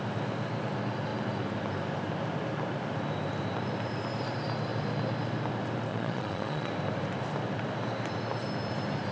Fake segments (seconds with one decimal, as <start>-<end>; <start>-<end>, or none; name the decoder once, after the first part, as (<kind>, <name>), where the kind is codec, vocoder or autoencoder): 5.9-6.7 (vocoder, Vocos)